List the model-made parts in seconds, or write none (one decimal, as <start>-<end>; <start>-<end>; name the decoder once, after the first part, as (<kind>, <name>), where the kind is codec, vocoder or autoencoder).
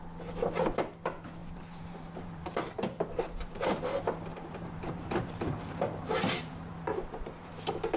1.4-3.8 (vocoder, BigVGAN v2); 4.3-7.5